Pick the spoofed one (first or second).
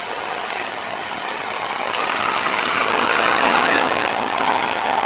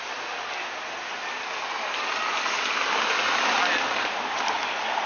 first